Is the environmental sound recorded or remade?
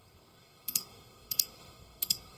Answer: remade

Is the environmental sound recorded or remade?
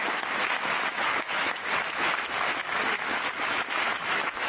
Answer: remade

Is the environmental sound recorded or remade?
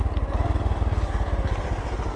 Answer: recorded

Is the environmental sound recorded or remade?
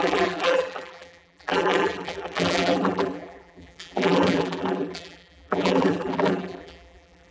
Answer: remade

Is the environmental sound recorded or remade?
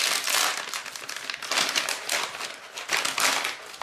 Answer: recorded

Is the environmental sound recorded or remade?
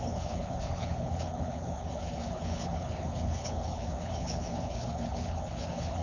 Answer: remade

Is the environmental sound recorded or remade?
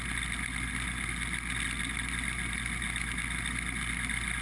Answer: recorded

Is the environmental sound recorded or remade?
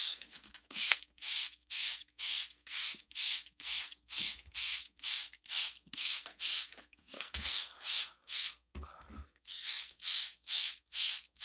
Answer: remade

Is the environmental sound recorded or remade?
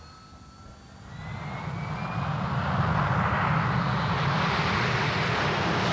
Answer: recorded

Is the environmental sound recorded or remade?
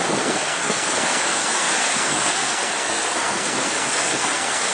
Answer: remade